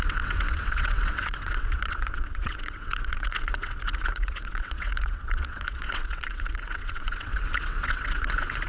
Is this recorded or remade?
remade